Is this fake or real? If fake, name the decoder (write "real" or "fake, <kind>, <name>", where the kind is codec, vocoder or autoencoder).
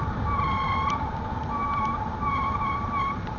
fake, vocoder, BigVGAN v2